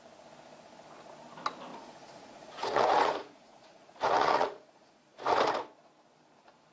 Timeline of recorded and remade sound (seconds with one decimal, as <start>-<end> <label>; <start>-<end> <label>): 0.0-1.7 recorded; 1.7-5.4 remade; 5.4-6.7 recorded